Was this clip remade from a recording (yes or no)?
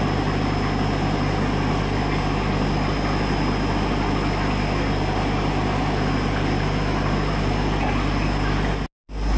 no